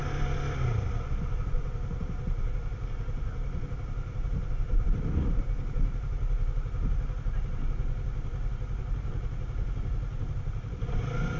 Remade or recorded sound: recorded